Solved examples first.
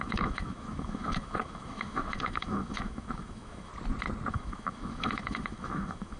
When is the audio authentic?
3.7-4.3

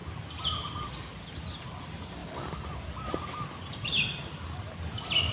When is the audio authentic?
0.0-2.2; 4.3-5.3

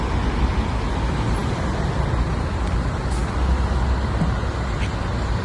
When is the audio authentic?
0.0-5.4

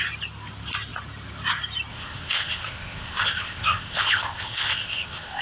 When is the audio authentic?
0.0-1.9

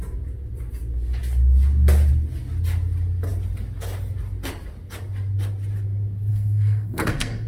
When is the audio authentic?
0.0-6.3

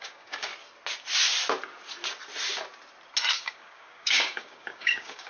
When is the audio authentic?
0.5-3.3

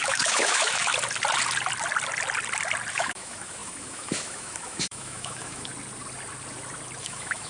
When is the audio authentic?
0.9-2.9; 5.7-7.0